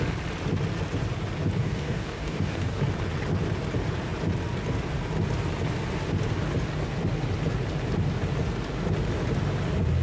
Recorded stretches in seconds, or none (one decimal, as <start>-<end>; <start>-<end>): 0.0-1.6; 2.8-10.0